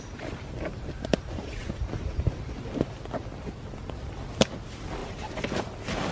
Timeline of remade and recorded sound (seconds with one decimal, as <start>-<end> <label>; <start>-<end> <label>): 0.0-6.1 recorded